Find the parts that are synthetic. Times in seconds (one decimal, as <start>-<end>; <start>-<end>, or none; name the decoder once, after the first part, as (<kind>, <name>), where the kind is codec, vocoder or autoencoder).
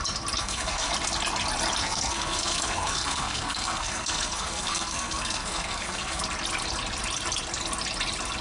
0.4-0.9 (codec, SNAC); 1.8-6.2